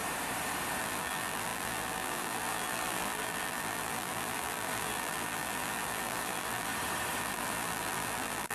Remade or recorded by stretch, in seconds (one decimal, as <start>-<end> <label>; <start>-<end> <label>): 0.0-0.8 recorded; 0.8-6.7 remade; 6.7-7.2 recorded; 7.2-8.5 remade